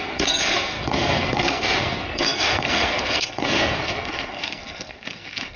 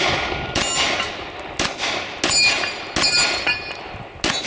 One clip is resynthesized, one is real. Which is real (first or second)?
second